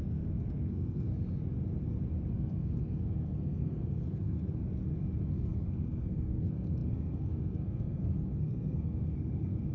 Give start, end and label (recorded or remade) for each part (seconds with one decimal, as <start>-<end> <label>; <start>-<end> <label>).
0.0-1.1 remade; 1.1-2.3 recorded; 2.3-4.6 remade; 4.6-5.3 recorded; 5.3-9.7 remade